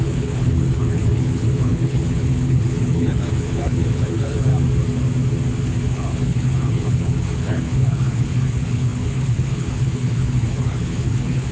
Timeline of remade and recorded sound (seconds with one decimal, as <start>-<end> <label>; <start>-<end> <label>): 0.0-4.5 remade; 4.5-5.9 recorded; 5.9-11.5 remade